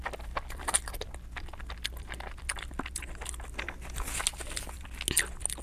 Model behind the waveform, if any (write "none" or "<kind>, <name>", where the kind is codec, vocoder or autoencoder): none